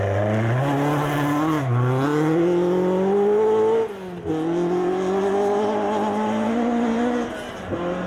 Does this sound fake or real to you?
real